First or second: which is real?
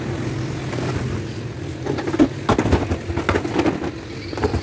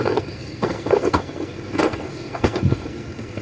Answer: first